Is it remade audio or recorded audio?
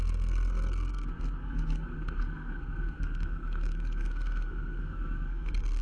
remade